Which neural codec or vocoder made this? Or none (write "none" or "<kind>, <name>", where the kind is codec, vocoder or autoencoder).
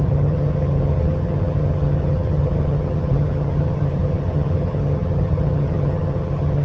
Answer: vocoder, HiFi-GAN